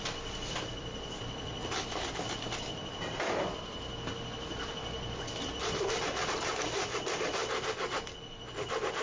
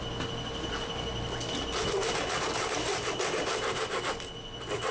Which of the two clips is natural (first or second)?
second